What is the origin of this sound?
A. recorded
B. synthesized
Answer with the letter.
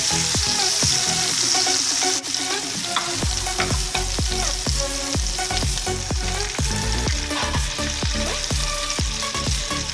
A